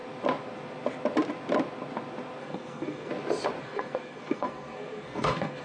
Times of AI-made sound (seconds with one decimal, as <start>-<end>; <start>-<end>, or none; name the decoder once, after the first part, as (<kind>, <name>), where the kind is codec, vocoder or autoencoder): 2.4-3.1 (codec, SNAC); 3.6-5.6